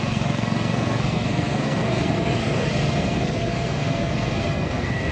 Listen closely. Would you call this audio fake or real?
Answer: fake